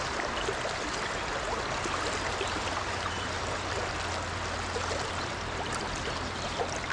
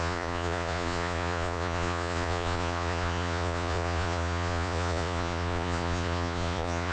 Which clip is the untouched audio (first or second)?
first